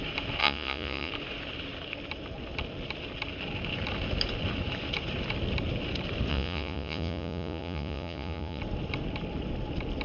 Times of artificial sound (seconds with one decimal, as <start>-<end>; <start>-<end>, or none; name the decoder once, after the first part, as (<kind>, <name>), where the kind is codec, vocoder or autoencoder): 0.4-1.1 (vocoder, Vocos); 6.3-8.6